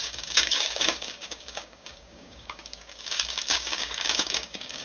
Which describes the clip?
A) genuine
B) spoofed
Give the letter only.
B